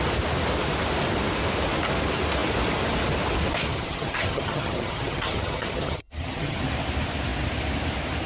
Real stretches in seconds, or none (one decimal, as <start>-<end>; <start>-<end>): 0.0-3.7; 6.6-8.3